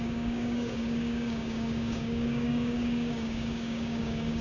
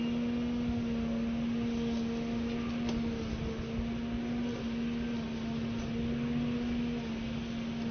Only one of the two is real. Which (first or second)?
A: second